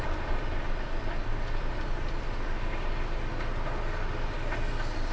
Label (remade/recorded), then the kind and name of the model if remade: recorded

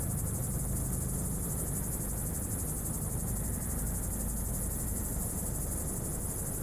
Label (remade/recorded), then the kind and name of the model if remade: remade, vocoder, BigVGAN v2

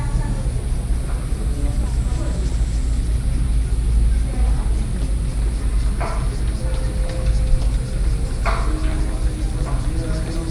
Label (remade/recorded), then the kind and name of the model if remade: recorded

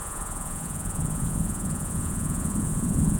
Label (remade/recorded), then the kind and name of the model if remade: remade, vocoder, Vocos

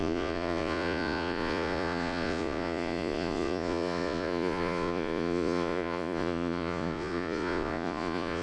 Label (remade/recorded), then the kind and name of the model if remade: remade, vocoder, Vocos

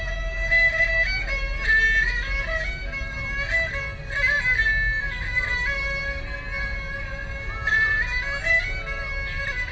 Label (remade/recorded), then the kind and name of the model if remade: recorded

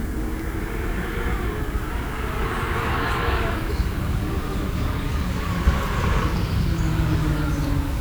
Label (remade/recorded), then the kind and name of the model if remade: remade, codec, DAC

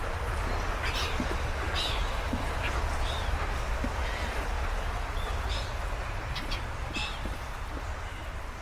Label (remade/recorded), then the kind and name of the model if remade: recorded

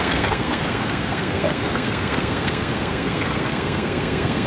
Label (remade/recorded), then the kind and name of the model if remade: remade, codec, SNAC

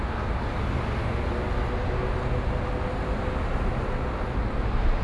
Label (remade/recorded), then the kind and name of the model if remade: recorded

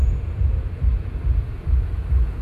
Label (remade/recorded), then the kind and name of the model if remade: remade, vocoder, Vocos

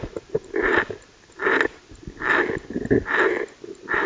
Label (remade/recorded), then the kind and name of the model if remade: recorded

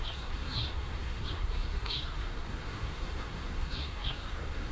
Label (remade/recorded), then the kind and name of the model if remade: remade, codec, SNAC